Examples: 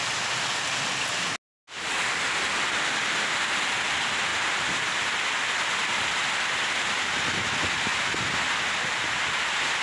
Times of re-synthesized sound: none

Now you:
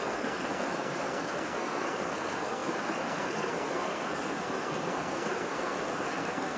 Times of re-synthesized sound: 0.0-6.6